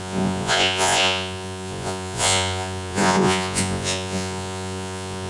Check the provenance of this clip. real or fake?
fake